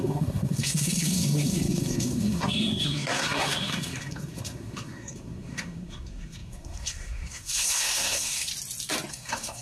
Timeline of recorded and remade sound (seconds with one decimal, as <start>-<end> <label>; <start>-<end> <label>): 0.0-8.5 remade; 8.5-9.1 recorded; 9.1-9.6 remade